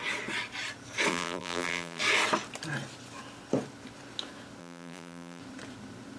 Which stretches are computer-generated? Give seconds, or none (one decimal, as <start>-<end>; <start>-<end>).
1.1-2.0; 4.6-5.4